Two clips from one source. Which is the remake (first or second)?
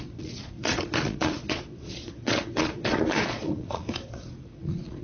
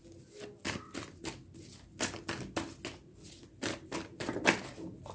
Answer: first